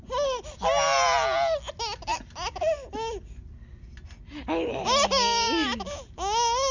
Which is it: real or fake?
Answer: real